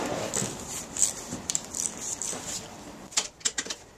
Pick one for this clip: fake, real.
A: fake